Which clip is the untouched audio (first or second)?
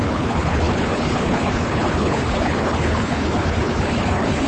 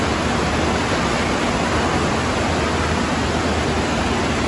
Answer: second